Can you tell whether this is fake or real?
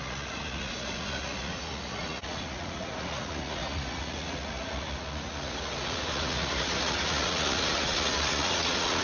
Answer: fake